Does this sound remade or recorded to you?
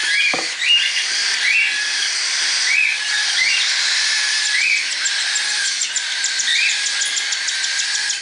recorded